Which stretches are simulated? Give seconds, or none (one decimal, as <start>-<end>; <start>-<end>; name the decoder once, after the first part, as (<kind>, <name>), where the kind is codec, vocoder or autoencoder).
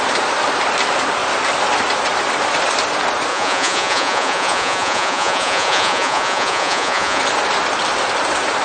3.3-7.2 (vocoder, Vocos)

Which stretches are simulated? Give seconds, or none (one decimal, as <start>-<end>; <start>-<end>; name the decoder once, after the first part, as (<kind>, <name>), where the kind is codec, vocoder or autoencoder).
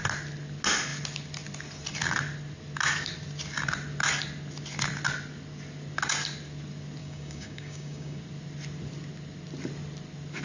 7.0-8.2 (codec, DAC)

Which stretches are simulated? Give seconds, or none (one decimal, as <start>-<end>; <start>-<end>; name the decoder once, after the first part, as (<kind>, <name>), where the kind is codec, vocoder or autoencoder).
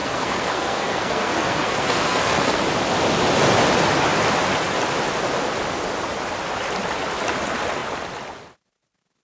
0.0-2.6 (codec, SNAC)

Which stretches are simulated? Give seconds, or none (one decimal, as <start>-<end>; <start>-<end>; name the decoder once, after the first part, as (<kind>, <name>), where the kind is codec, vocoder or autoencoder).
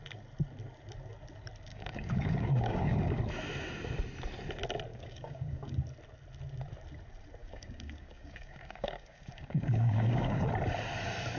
1.7-3.2 (codec, DAC); 4.9-5.8; 7.4-10.5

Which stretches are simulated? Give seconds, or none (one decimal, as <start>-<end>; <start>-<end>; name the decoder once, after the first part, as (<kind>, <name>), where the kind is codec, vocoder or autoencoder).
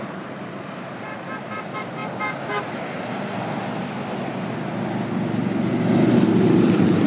0.0-2.0 (vocoder, BigVGAN v2); 6.1-7.1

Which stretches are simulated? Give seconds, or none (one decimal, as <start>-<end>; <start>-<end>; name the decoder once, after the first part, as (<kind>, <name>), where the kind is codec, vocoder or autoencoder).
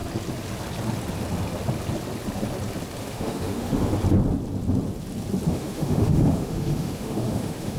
3.0-3.9 (autoencoder, DAC-VAE); 5.5-7.8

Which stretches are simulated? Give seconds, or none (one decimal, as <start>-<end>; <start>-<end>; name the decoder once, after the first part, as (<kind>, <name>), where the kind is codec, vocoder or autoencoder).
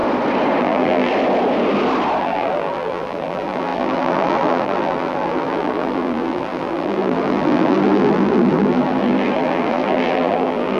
0.6-1.1 (vocoder, BigVGAN v2); 2.2-10.8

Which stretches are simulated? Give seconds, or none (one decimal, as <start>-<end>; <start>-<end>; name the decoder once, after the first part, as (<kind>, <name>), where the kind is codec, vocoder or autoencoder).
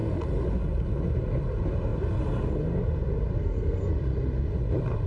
3.4-3.9 (codec, SNAC)